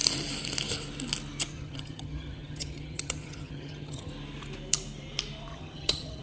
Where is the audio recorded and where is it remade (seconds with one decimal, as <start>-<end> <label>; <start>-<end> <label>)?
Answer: 0.0-1.5 recorded; 1.5-4.1 remade; 4.1-5.5 recorded; 5.5-6.2 remade